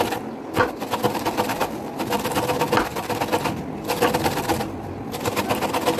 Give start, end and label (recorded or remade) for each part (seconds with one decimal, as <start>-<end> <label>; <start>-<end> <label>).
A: 0.0-6.0 recorded